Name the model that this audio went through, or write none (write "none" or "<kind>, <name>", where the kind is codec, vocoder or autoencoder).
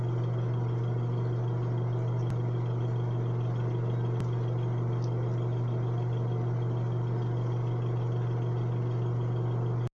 none